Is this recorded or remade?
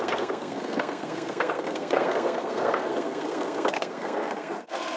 remade